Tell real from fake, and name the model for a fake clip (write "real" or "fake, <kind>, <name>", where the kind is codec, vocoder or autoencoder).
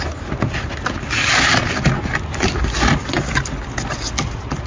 real